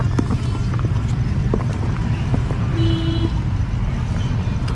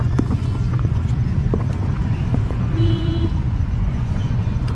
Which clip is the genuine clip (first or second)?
first